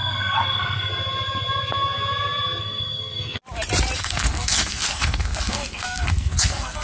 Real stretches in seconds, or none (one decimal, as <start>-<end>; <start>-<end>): 0.9-2.6; 3.4-4.0